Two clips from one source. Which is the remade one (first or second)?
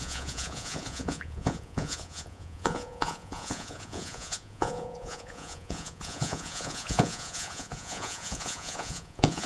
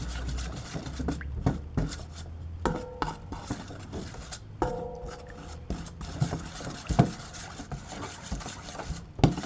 first